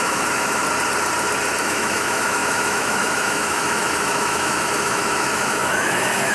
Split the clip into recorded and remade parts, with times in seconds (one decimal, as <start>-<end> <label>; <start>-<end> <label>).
0.0-0.6 remade; 0.6-1.6 recorded; 1.6-6.3 remade